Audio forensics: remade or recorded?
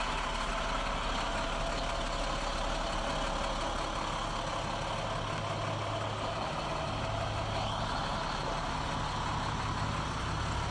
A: recorded